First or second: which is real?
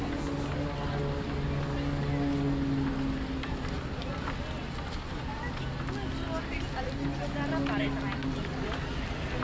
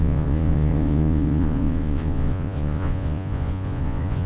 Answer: first